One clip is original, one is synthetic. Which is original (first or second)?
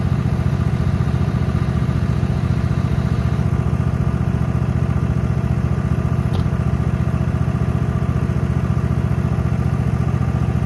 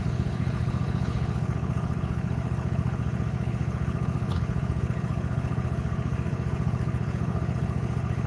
first